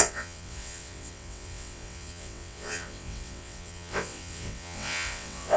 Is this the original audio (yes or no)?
no